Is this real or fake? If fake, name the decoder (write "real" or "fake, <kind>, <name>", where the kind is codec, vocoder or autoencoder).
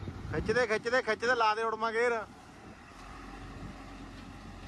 real